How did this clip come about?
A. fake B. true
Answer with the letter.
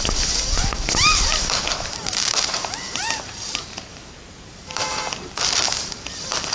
A